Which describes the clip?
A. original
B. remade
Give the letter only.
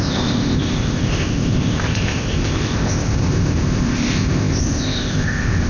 B